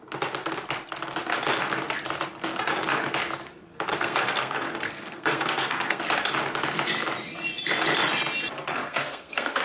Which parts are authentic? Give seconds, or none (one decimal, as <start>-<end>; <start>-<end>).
0.0-3.9; 6.0-8.7